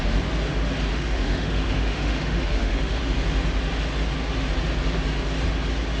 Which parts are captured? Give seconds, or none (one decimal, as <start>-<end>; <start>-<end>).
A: 0.0-0.9; 3.0-6.0